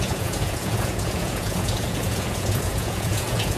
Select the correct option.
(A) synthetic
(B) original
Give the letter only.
A